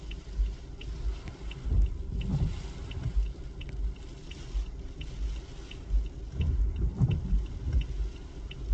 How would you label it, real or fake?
real